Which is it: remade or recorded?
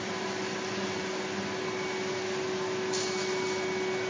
recorded